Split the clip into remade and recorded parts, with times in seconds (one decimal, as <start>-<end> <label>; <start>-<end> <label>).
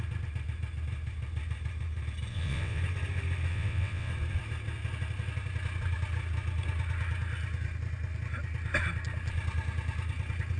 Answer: 0.0-2.3 recorded; 2.3-2.8 remade; 2.8-3.5 recorded; 3.5-4.1 remade; 4.1-10.6 recorded